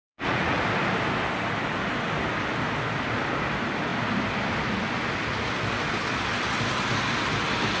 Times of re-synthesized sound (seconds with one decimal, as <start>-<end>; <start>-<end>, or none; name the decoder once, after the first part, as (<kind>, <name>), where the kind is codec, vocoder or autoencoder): 0.0-0.6 (vocoder, Vocos)